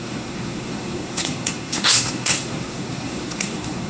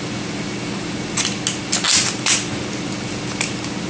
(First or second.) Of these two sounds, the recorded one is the second